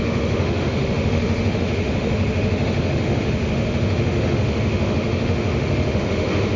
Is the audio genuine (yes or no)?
no